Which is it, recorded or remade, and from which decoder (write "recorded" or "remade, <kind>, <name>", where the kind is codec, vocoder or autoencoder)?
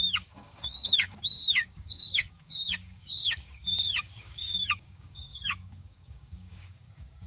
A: remade, codec, DAC